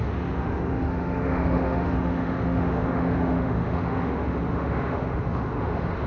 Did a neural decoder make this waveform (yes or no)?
yes